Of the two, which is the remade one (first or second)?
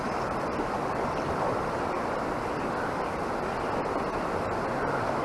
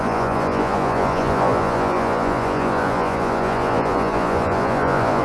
second